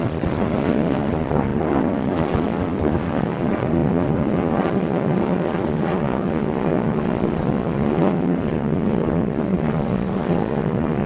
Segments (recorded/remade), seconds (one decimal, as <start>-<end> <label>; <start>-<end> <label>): 0.0-11.1 remade